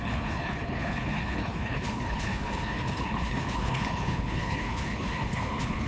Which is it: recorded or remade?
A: remade